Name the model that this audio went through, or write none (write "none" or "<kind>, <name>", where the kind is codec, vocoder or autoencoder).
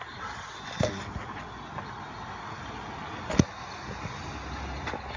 none